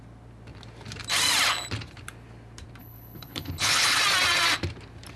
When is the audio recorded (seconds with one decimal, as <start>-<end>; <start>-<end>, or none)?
0.0-2.8; 4.0-5.2